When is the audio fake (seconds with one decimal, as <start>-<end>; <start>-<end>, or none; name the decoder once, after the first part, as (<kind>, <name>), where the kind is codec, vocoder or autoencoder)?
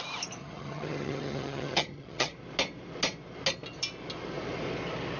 0.4-2.3 (vocoder, HiFi-GAN)